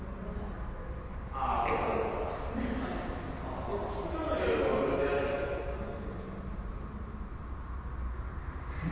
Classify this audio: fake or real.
real